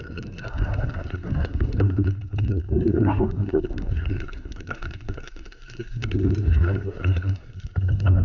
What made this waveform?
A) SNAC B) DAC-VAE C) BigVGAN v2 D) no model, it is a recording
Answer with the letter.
A